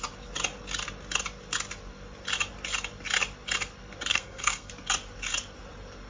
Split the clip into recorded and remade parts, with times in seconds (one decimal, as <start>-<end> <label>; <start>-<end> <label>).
0.0-4.1 recorded; 4.1-4.7 remade; 4.7-6.1 recorded